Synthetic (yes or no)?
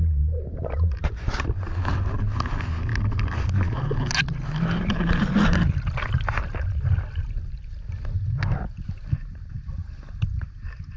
no